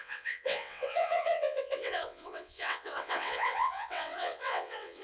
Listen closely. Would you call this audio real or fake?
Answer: fake